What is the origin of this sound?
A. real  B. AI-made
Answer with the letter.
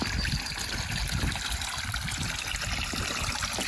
A